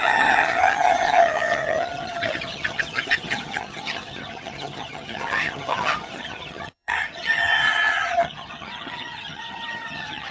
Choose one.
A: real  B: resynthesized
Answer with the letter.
B